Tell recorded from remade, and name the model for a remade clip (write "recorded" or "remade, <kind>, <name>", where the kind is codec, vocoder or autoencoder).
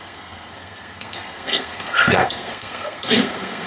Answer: remade, codec, SNAC